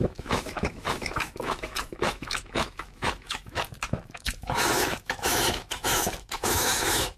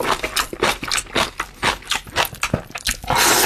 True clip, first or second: second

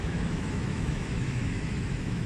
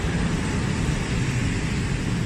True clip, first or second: second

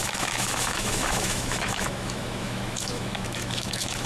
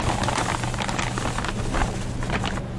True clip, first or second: second